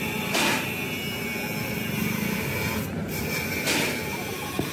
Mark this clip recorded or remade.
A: recorded